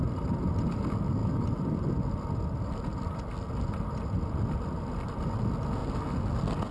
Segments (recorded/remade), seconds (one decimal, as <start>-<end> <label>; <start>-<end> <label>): 0.0-6.7 recorded